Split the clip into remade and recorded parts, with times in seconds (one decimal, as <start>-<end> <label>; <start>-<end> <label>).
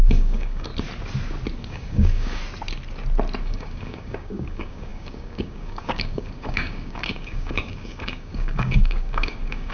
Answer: 0.0-0.7 remade; 0.7-1.6 recorded; 1.6-2.4 remade; 2.4-3.4 recorded; 3.4-9.7 remade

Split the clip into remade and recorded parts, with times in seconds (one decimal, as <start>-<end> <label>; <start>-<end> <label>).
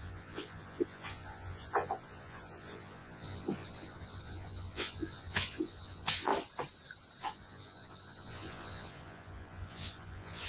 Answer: 0.0-6.3 remade; 6.3-7.2 recorded; 7.2-10.5 remade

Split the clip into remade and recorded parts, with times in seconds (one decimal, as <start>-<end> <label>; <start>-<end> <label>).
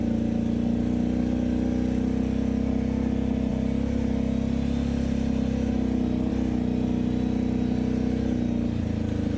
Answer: 0.0-9.4 recorded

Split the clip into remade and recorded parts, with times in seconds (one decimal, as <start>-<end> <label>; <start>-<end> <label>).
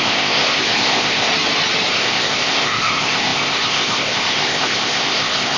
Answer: 0.0-1.3 remade; 1.3-1.9 recorded; 1.9-5.6 remade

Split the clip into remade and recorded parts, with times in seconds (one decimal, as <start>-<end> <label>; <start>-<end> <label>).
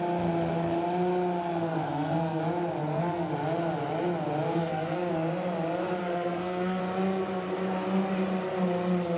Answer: 0.0-1.5 recorded; 1.5-2.4 remade; 2.4-2.8 recorded; 2.8-3.3 remade; 3.3-4.5 recorded; 4.5-5.1 remade; 5.1-6.0 recorded; 6.0-6.8 remade; 6.8-9.2 recorded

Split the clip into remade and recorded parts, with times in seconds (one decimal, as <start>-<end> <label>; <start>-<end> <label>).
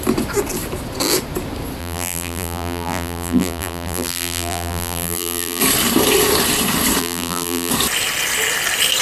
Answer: 0.0-1.8 recorded; 1.8-5.6 remade; 5.6-7.0 recorded; 7.0-7.7 remade; 7.7-9.0 recorded